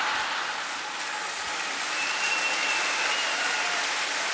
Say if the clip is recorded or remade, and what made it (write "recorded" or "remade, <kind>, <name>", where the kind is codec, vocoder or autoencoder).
recorded